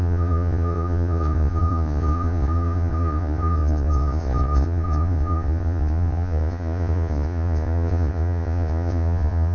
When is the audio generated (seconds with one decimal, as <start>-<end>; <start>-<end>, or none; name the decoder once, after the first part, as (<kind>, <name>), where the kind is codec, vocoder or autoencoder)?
0.0-9.5 (vocoder, Vocos)